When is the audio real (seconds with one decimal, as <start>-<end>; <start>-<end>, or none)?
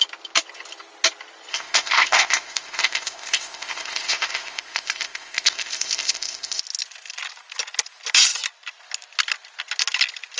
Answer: 0.0-1.5; 6.6-10.4